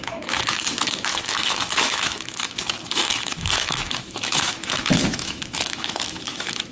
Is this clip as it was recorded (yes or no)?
no